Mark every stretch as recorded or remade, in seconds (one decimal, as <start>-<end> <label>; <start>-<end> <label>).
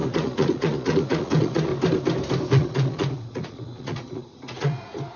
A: 0.0-1.7 remade; 1.7-2.5 recorded; 2.5-5.2 remade